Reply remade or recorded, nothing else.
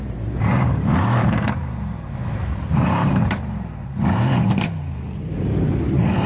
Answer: remade